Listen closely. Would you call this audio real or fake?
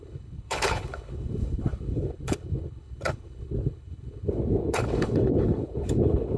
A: fake